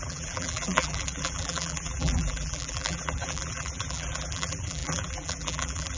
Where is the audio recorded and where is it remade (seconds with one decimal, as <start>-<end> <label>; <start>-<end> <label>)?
0.0-6.0 remade